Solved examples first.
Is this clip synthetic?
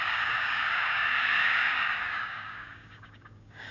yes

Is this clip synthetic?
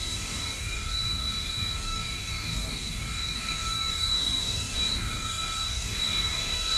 yes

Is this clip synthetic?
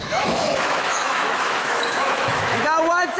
yes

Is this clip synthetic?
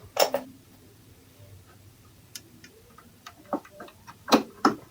yes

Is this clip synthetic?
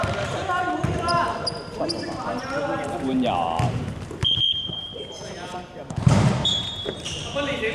yes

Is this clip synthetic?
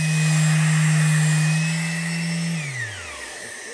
no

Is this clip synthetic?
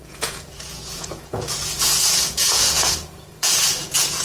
yes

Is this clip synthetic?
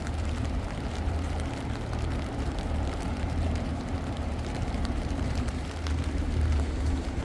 yes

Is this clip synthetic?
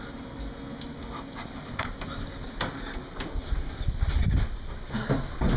no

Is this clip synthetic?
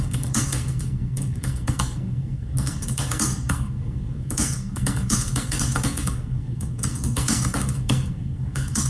yes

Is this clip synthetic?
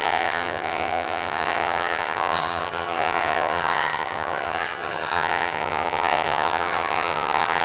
yes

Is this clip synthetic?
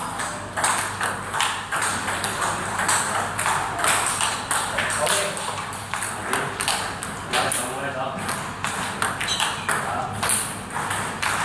no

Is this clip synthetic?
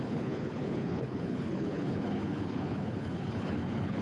yes